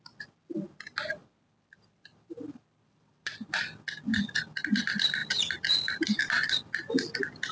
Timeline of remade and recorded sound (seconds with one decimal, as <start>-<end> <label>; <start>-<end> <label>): 0.0-1.2 recorded; 1.2-3.6 remade; 3.6-4.1 recorded; 4.1-4.6 remade; 4.6-5.2 recorded; 5.2-6.9 remade; 6.9-7.5 recorded